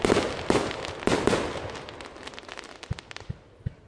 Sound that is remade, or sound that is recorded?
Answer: recorded